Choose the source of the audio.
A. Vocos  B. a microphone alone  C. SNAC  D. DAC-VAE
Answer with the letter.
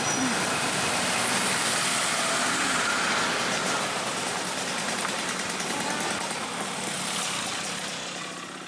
B